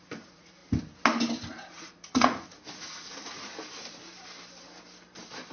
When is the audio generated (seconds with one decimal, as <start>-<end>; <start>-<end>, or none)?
0.0-0.6; 1.7-3.5